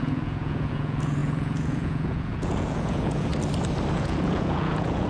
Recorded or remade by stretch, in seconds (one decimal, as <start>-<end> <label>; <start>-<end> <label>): 0.0-3.3 remade; 3.3-3.9 recorded; 3.9-5.1 remade